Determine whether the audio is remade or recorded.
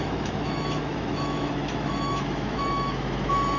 remade